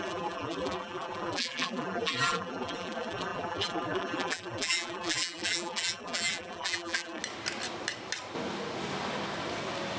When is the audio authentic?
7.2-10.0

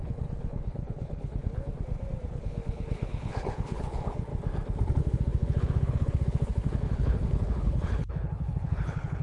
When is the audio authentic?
1.7-2.3; 4.3-5.0

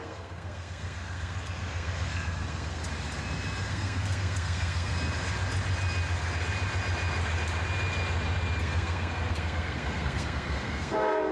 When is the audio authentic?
2.8-3.7; 4.9-8.6

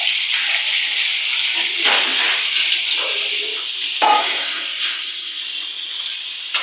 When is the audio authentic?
0.0-4.2; 5.4-6.6

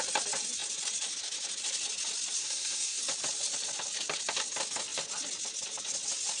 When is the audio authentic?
0.0-2.4; 3.0-6.4

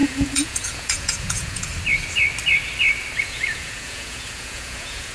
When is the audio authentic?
1.7-3.2

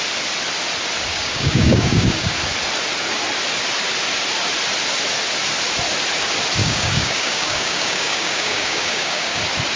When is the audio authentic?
0.0-1.1; 2.3-6.6; 9.4-9.8

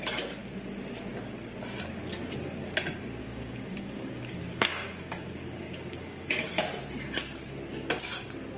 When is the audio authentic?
0.0-3.2; 6.5-8.6